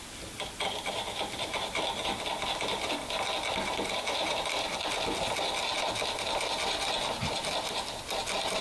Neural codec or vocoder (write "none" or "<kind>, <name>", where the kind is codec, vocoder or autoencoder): none